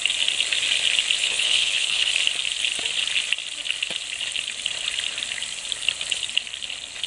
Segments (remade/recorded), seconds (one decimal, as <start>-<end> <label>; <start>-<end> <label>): 0.0-1.2 recorded; 1.2-2.1 remade; 2.1-7.1 recorded